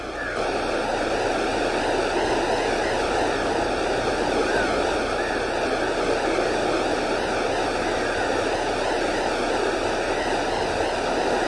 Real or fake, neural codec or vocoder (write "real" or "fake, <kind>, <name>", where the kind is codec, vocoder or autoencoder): real